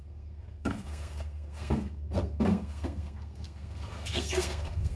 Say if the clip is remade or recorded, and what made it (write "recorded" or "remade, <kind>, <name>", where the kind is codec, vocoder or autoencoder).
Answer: remade, codec, SNAC